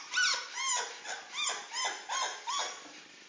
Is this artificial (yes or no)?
no